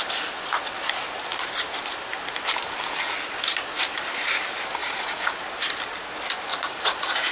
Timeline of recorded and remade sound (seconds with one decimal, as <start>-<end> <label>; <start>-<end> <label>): 0.0-4.8 recorded; 4.8-5.4 remade; 5.4-6.5 recorded; 6.5-7.3 remade